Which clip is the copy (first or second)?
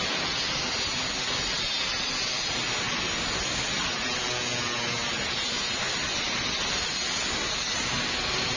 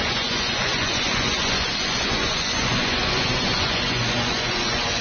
second